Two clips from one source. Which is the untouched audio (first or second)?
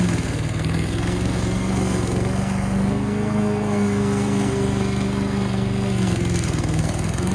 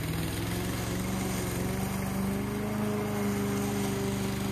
second